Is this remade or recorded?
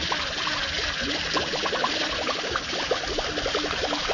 recorded